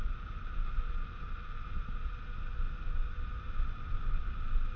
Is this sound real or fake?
real